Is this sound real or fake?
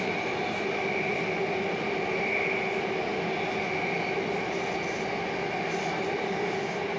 real